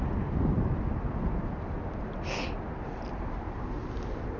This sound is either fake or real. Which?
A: real